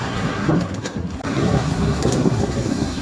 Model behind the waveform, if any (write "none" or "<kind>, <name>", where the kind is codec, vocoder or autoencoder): codec, SNAC